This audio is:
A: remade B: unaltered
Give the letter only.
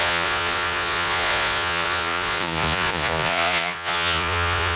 A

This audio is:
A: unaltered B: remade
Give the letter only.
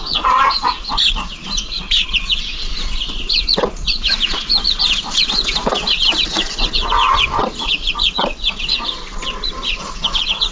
B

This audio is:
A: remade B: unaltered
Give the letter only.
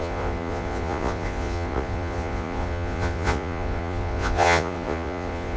A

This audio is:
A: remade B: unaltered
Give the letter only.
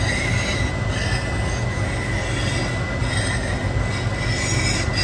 B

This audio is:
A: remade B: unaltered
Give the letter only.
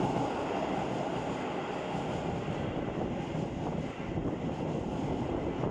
B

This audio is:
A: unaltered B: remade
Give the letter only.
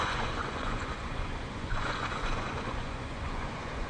B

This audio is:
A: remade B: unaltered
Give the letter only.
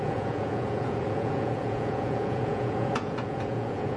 A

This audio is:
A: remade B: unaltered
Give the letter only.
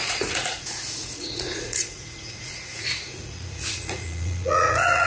A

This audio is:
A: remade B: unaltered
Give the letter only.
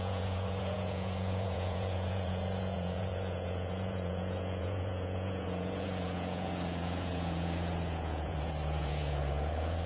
A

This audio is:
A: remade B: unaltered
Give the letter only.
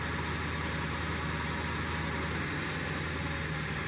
B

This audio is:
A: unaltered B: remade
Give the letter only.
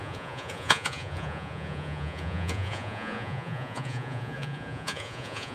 B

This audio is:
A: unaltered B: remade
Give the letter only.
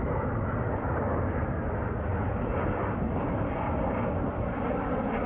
A